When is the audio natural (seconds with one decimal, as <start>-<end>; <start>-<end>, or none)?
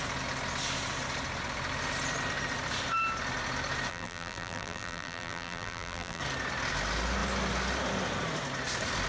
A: 0.0-3.9; 6.2-9.1